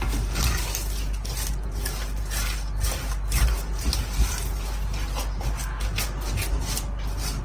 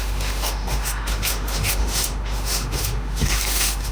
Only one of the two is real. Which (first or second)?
first